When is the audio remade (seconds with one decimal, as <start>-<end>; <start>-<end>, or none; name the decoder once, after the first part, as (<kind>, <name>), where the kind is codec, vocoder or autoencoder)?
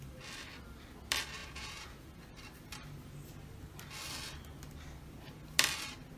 1.4-2.2 (vocoder, Vocos)